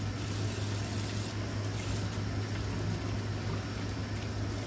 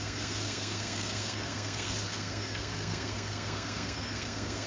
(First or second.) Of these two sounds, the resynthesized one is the second